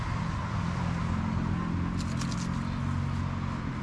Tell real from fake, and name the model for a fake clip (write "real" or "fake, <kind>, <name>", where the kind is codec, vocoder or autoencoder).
real